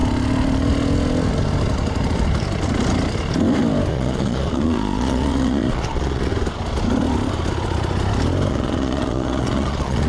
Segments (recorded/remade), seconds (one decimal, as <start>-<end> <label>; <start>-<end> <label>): 0.0-3.9 recorded; 3.9-6.3 remade; 6.3-8.5 recorded; 8.5-10.1 remade